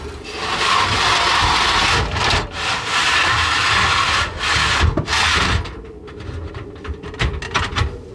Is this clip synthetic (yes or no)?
no